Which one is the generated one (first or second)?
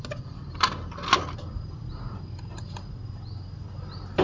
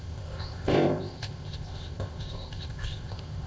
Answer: second